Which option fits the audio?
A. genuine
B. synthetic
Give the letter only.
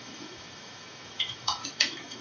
B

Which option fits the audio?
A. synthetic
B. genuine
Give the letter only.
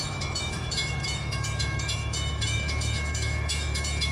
A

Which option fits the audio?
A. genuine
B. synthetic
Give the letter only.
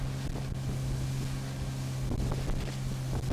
A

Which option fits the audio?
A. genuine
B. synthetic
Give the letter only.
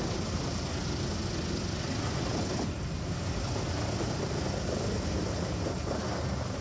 A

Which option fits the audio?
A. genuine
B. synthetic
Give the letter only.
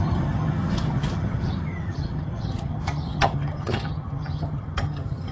B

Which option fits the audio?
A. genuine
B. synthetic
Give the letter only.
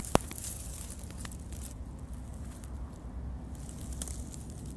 A